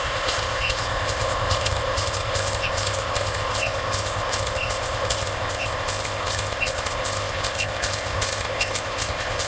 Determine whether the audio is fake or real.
fake